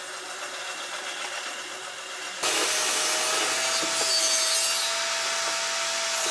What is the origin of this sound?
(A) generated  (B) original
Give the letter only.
B